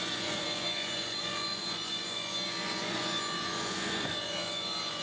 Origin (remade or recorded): remade